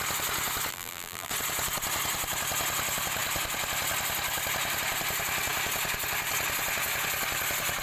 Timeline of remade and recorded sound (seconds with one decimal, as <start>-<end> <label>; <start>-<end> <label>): 0.0-0.7 recorded; 0.7-1.3 remade; 1.3-7.8 recorded